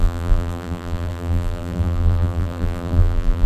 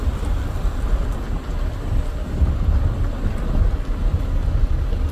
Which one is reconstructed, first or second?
first